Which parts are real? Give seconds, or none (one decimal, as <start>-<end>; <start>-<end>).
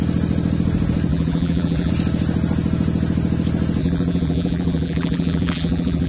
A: 0.0-1.1; 1.9-3.8